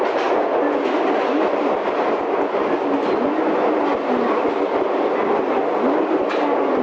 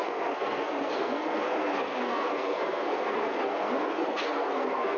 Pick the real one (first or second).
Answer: first